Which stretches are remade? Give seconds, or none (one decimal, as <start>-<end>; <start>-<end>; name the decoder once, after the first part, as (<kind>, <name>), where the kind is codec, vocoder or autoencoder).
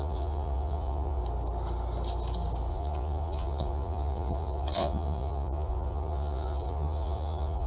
0.0-1.2 (vocoder, Vocos); 2.7-7.7